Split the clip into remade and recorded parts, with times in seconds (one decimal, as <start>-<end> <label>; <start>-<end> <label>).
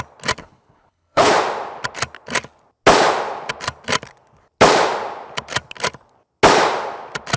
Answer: 0.0-0.4 recorded; 0.4-1.3 remade; 1.3-7.4 recorded